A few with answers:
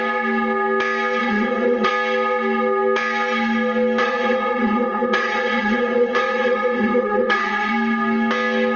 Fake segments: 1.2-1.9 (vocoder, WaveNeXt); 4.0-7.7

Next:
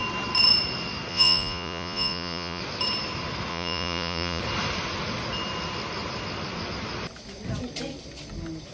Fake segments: 1.1-2.6 (vocoder, Vocos); 3.5-4.4

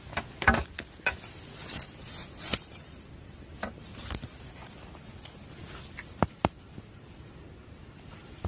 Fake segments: none

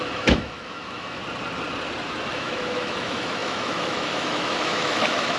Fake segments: 0.0-1.2 (autoencoder, DAC-VAE); 2.3-5.4

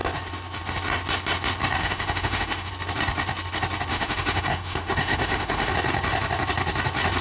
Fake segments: 1.8-2.7 (autoencoder, DAC-VAE); 3.9-5.7

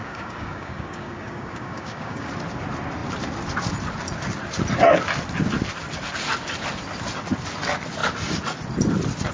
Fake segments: 0.0-2.3 (codec, DAC)

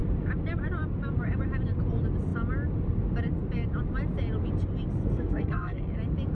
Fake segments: 5.0-5.8 (codec, SNAC)

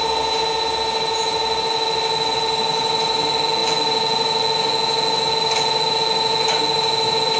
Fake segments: none